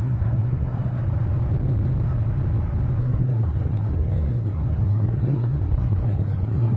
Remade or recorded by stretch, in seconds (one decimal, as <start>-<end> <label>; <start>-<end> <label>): 0.0-1.0 remade; 1.0-3.0 recorded; 3.0-6.8 remade